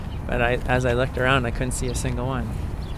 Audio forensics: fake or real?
real